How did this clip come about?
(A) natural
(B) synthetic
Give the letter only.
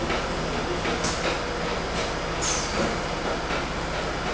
A